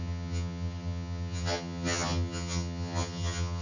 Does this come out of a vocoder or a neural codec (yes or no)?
yes